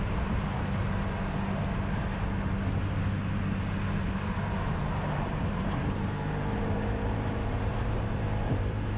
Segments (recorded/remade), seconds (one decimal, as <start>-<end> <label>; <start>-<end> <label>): 0.0-0.8 remade; 0.8-4.0 recorded; 4.0-9.0 remade